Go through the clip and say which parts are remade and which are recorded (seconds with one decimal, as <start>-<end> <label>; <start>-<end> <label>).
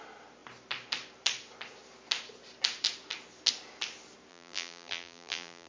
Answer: 0.0-4.3 recorded; 4.3-5.7 remade